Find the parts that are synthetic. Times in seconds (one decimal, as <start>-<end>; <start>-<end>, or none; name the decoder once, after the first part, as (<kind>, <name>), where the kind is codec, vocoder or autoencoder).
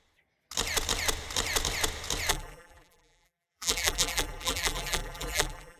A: 2.3-5.8 (vocoder, BigVGAN v2)